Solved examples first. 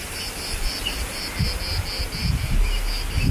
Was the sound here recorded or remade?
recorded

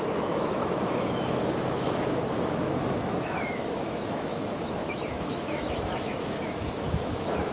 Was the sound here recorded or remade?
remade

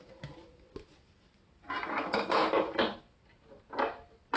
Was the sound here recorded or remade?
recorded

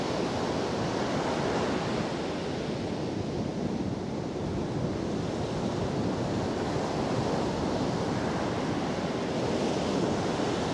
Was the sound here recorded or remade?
recorded